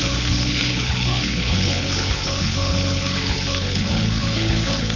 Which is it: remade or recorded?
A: remade